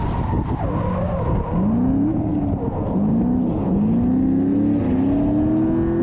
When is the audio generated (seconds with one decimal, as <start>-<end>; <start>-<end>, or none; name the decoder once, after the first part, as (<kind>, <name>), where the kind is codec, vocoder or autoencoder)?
none